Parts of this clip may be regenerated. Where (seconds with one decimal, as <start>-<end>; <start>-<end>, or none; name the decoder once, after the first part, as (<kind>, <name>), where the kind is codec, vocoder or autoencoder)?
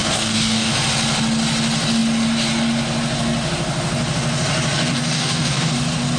0.0-0.7 (codec, DAC); 4.9-5.7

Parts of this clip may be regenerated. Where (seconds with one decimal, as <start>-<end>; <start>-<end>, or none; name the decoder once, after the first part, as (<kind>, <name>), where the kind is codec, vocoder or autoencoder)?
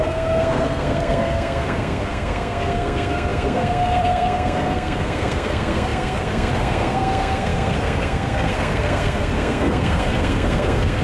0.0-11.0 (codec, SNAC)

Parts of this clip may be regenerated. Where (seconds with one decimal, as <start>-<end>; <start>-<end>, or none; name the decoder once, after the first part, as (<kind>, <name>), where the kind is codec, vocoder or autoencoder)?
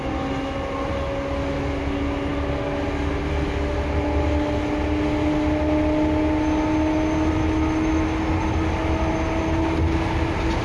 none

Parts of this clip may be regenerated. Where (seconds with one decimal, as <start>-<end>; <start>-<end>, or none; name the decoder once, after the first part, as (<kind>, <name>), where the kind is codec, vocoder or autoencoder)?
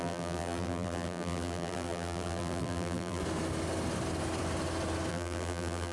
0.0-3.2 (vocoder, BigVGAN v2); 5.1-5.9